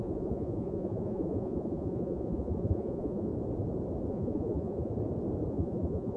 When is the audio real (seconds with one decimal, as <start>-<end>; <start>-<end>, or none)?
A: 3.3-4.1; 4.9-5.5